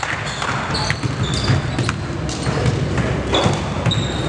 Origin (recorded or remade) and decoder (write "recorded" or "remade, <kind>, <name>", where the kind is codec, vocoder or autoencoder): recorded